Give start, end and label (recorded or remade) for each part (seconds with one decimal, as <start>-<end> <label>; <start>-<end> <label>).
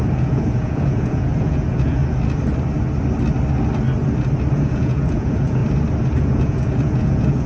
0.0-2.0 remade; 2.0-4.5 recorded; 4.5-5.6 remade; 5.6-6.2 recorded; 6.2-7.5 remade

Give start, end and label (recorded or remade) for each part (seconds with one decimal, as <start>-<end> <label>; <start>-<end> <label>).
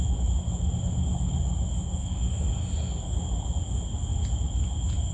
0.0-5.1 recorded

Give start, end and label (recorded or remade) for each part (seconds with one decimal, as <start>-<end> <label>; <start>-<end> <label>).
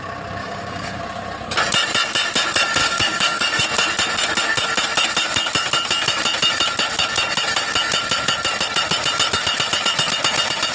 0.0-0.4 recorded; 0.4-1.0 remade; 1.0-2.8 recorded; 2.8-3.6 remade; 3.6-10.7 recorded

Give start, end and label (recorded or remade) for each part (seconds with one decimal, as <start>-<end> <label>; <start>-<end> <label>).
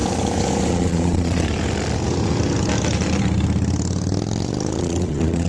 0.0-0.7 recorded; 0.7-1.5 remade; 1.5-4.8 recorded; 4.8-5.5 remade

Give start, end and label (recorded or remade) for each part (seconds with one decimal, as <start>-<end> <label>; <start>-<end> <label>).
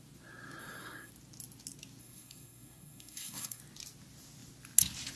0.0-0.6 recorded; 0.6-1.1 remade; 1.1-2.0 recorded; 2.0-3.6 remade; 3.6-5.2 recorded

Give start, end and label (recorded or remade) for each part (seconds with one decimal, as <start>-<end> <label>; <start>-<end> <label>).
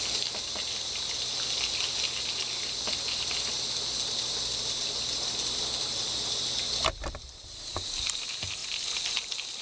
0.0-9.6 recorded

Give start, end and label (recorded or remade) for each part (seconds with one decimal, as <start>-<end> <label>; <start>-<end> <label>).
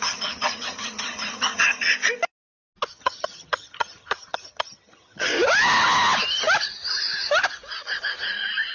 0.0-1.9 remade; 1.9-2.9 recorded; 2.9-5.3 remade; 5.3-8.7 recorded